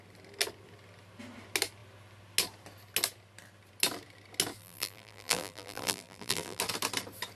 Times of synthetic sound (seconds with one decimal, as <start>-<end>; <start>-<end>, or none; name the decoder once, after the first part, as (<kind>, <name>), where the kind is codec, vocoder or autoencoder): 4.6-6.6 (vocoder, BigVGAN v2)

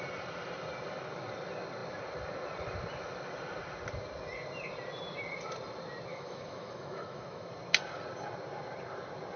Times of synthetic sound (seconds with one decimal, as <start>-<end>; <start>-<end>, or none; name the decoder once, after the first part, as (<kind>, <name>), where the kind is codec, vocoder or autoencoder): 6.1-7.5 (autoencoder, DAC-VAE)

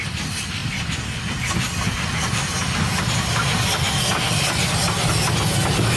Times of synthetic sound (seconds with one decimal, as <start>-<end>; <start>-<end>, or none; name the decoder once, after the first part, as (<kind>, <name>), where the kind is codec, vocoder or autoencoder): none

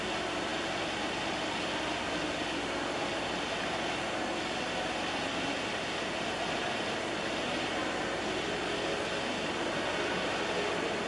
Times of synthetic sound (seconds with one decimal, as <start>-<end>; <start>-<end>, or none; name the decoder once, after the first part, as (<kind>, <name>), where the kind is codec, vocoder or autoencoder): none

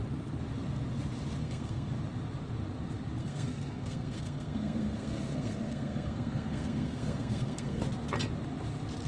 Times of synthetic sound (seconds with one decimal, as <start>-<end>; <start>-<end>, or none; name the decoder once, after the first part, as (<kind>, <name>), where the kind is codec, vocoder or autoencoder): 1.4-1.9 (codec, SNAC); 3.2-7.8

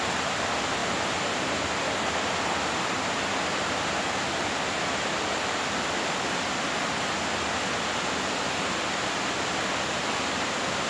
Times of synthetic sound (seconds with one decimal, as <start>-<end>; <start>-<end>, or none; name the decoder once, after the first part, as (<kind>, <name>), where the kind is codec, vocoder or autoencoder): none